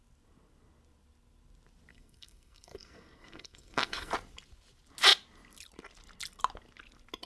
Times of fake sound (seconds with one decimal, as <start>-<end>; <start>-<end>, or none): 1.9-4.1